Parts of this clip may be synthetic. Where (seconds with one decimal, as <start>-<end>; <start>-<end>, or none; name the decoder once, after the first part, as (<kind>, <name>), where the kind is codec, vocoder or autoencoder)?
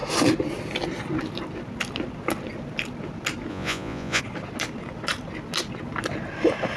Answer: 3.5-4.2 (vocoder, Vocos)